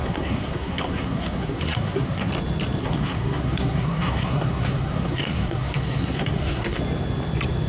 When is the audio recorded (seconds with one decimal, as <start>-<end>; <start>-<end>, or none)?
2.3-2.8; 6.8-7.7